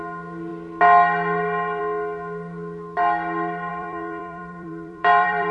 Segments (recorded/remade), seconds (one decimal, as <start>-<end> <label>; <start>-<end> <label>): 0.0-3.7 recorded; 3.7-5.5 remade